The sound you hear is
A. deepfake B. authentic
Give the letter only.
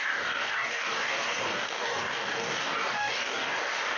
A